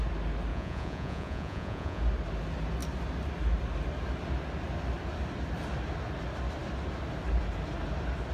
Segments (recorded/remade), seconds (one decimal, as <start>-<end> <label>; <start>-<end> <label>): 0.0-0.5 recorded; 0.5-2.0 remade; 2.0-8.3 recorded